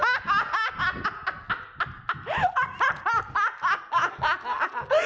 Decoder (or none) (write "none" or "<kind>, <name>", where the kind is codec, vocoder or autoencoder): none